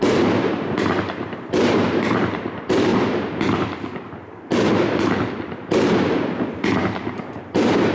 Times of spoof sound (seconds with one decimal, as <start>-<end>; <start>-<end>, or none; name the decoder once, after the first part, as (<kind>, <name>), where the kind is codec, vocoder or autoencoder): 0.0-2.9 (vocoder, BigVGAN v2); 5.3-7.9